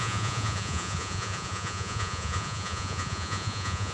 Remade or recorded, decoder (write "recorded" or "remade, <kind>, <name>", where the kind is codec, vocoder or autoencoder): remade, vocoder, Vocos